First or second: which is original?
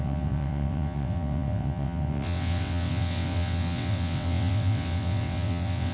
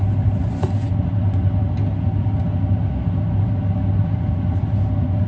second